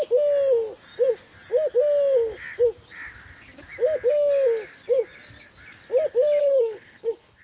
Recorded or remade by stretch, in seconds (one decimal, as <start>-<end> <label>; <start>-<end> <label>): 0.0-6.4 recorded; 6.4-7.4 remade

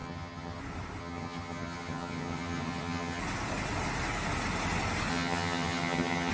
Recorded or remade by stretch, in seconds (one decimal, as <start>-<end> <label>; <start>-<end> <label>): 0.0-0.6 remade; 0.6-1.0 recorded; 1.0-3.2 remade; 3.2-5.1 recorded; 5.1-6.3 remade

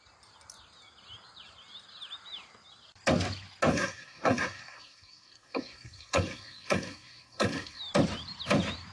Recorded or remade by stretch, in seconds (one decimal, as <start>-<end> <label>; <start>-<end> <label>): 0.0-3.7 recorded; 3.7-7.8 remade; 7.8-8.9 recorded